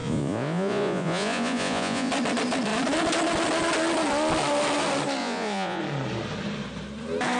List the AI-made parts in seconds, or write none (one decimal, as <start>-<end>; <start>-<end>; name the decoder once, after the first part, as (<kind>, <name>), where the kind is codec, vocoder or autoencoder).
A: 0.0-2.1 (vocoder, Vocos); 5.2-5.8